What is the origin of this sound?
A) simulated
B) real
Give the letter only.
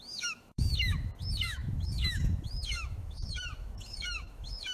A